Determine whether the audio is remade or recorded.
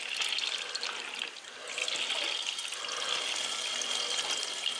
recorded